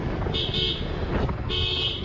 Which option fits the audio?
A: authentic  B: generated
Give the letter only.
A